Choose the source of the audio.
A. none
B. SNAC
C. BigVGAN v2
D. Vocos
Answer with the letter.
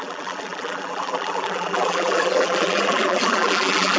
C